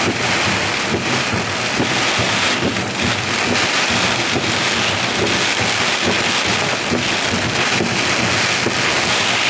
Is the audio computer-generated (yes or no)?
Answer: no